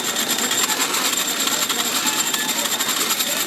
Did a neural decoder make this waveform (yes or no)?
no